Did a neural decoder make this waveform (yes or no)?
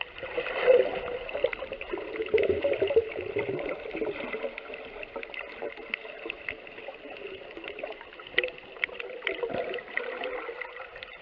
no